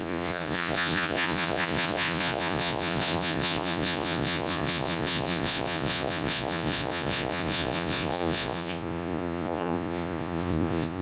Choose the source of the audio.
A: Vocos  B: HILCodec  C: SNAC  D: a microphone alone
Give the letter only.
A